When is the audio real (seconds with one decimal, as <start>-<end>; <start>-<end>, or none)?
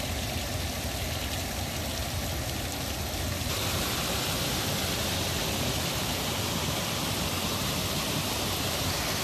0.0-9.2